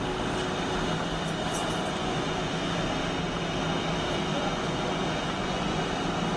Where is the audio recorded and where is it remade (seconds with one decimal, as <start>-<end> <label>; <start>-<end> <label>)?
0.0-2.0 recorded; 2.0-2.7 remade; 2.7-4.3 recorded; 4.3-5.8 remade; 5.8-6.4 recorded